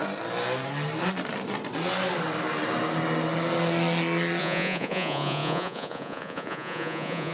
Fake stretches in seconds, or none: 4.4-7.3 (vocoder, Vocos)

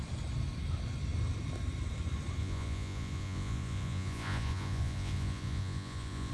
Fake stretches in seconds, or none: 2.4-6.3 (vocoder, Vocos)

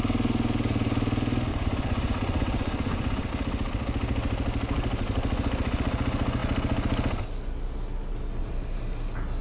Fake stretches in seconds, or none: 1.5-3.3 (vocoder, Vocos)